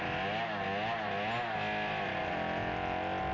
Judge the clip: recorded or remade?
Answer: recorded